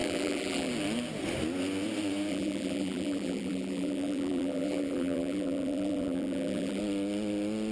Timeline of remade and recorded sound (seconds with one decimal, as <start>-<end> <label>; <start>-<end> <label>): 0.0-0.7 remade; 0.7-2.3 recorded; 2.3-6.8 remade; 6.8-7.7 recorded